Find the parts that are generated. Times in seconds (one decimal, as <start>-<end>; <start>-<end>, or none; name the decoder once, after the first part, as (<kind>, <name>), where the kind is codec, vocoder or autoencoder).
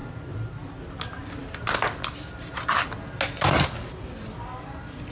0.0-0.8 (vocoder, BigVGAN v2)